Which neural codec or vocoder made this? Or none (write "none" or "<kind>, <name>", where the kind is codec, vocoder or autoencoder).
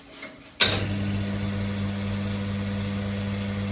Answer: none